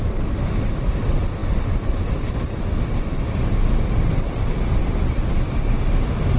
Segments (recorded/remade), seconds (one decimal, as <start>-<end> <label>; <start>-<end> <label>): 0.0-6.4 recorded